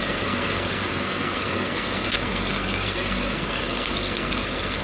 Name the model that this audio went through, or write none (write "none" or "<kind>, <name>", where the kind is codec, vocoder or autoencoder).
codec, SNAC